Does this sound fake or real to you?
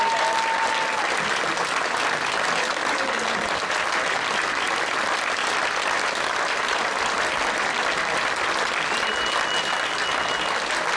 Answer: real